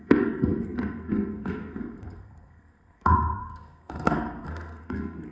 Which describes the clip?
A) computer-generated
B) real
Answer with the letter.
A